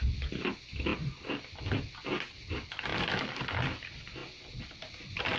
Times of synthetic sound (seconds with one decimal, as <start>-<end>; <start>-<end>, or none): none